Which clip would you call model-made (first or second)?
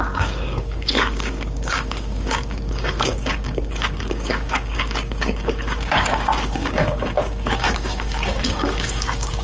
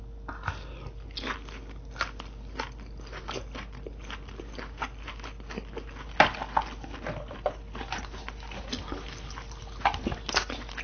first